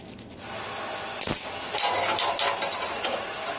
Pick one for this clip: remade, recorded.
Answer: recorded